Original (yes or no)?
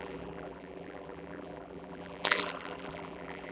no